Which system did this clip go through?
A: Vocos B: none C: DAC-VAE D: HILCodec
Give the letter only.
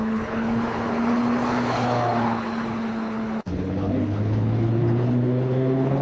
D